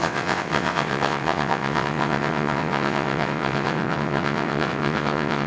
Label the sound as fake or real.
fake